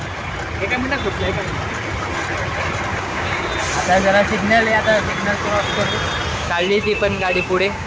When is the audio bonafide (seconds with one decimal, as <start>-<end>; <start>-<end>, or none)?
0.0-2.9; 3.5-6.3